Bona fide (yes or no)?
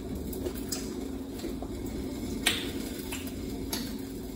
yes